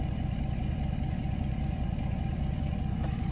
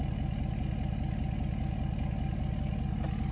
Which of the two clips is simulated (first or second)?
first